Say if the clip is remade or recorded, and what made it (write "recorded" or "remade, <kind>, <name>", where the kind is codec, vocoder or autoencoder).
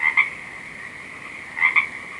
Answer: recorded